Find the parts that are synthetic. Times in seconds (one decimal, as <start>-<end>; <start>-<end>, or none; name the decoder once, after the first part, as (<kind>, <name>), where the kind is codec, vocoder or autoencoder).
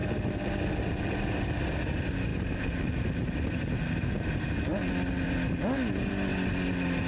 0.0-1.6 (vocoder, BigVGAN v2); 2.3-4.9